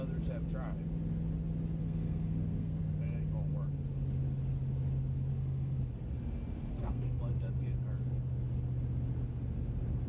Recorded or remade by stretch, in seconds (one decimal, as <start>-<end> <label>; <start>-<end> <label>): 0.0-1.8 recorded; 1.8-2.8 remade; 2.8-5.3 recorded; 5.3-5.8 remade; 5.8-6.7 recorded; 6.7-7.2 remade; 7.2-10.1 recorded